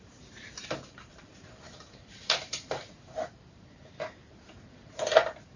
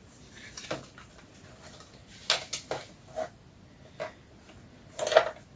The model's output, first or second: first